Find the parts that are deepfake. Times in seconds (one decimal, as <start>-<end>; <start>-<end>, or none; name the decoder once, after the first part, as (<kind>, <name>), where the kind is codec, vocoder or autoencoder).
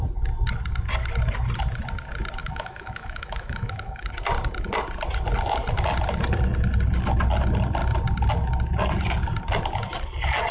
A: 2.4-4.1 (autoencoder, DAC-VAE)